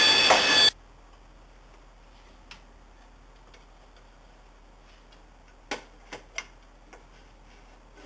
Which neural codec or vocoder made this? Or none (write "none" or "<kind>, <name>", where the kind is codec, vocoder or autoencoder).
none